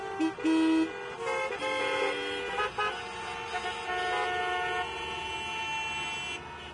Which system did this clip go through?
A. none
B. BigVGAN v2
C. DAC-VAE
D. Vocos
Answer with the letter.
A